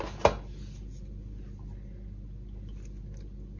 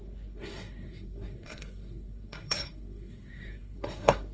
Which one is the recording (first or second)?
first